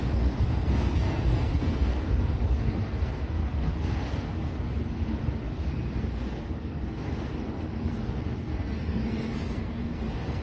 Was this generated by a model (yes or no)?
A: yes